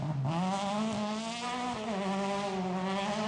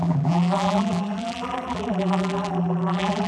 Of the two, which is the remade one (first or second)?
second